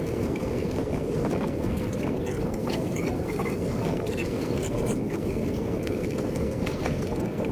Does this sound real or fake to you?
fake